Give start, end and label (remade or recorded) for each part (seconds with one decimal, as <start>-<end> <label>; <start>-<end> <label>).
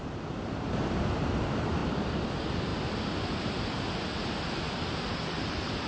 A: 0.0-5.9 recorded